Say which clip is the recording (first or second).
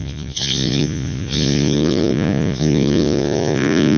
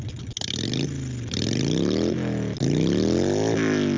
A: second